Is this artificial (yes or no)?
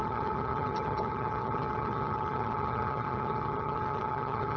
yes